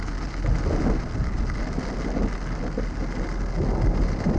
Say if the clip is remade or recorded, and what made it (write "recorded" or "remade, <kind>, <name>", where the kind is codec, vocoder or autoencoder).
recorded